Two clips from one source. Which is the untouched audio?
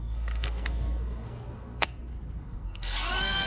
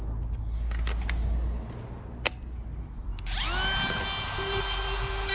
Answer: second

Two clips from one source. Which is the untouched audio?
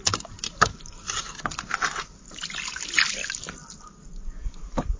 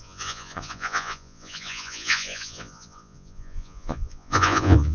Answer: first